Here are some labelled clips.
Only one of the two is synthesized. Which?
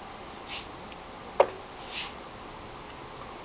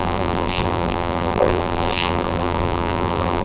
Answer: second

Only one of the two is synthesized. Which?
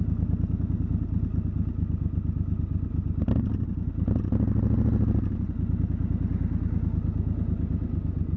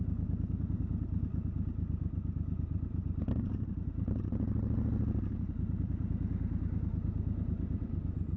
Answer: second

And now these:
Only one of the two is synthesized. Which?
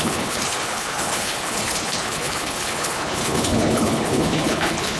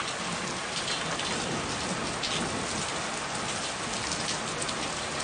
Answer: first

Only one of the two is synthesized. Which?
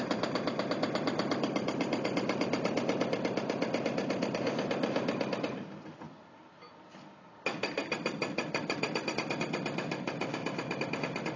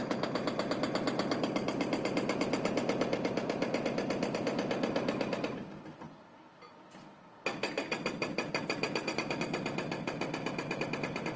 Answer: first